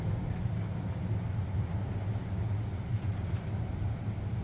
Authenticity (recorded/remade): recorded